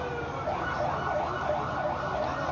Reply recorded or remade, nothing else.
recorded